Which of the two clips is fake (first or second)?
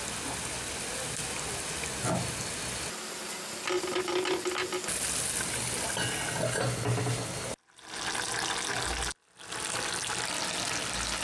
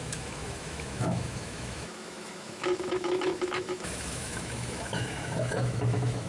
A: second